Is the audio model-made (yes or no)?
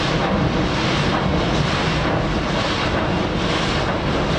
no